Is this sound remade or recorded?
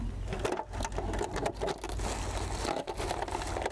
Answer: recorded